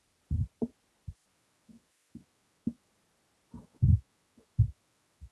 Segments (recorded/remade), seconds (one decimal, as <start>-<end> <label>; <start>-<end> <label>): 0.0-1.3 recorded; 1.3-2.9 remade; 2.9-3.6 recorded; 3.6-5.3 remade